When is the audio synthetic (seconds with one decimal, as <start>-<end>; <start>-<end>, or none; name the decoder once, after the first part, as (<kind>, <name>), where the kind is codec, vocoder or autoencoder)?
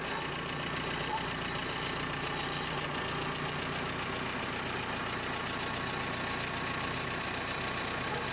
none